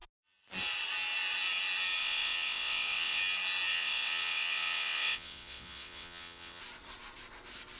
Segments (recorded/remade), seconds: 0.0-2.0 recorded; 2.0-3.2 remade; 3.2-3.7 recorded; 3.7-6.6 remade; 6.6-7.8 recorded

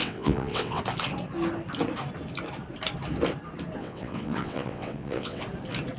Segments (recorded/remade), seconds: 0.0-0.8 remade; 0.8-3.8 recorded; 3.8-5.4 remade; 5.4-6.0 recorded

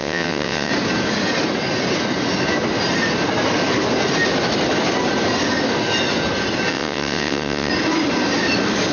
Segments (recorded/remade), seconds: 0.0-0.7 remade; 0.7-6.7 recorded; 6.7-7.7 remade; 7.7-8.9 recorded

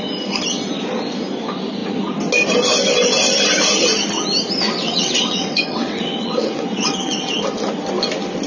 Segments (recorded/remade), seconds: 0.0-4.8 recorded; 4.8-7.4 remade; 7.4-8.5 recorded

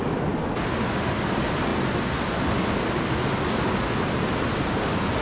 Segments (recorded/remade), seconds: 0.0-5.2 recorded

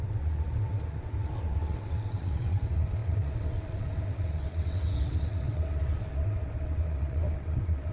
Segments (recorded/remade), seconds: 0.0-7.9 remade

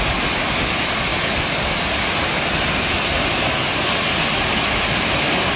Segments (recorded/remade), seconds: 0.0-5.6 recorded

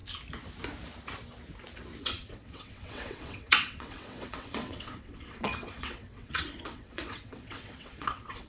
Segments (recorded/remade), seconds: 0.0-2.0 recorded; 2.0-8.5 remade